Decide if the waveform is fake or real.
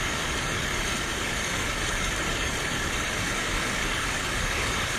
fake